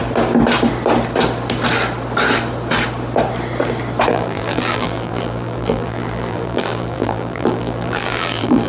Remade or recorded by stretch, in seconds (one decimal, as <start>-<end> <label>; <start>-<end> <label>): 0.0-4.1 recorded; 4.1-8.7 remade